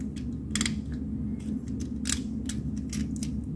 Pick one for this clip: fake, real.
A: real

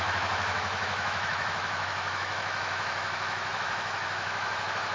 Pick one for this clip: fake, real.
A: fake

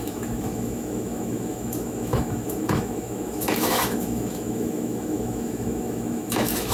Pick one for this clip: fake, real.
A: fake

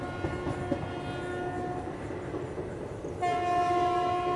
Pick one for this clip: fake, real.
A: real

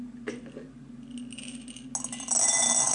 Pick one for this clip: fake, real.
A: real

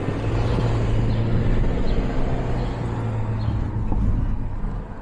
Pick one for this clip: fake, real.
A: real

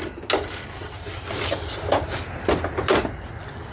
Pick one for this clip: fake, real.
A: real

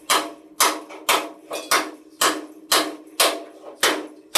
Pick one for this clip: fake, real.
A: real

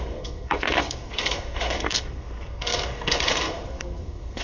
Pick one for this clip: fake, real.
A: fake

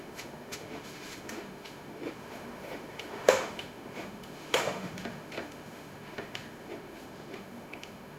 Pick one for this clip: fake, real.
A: fake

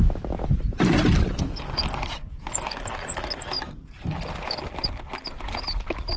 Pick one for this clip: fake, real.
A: real